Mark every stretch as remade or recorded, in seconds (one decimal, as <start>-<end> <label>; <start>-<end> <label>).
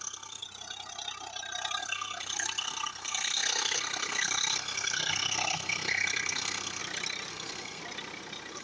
0.0-0.4 remade; 0.4-1.8 recorded; 1.8-6.8 remade; 6.8-7.3 recorded; 7.3-7.8 remade; 7.8-8.6 recorded